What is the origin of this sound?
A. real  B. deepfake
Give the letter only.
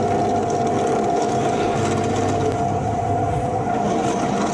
A